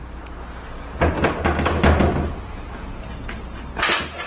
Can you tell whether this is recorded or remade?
recorded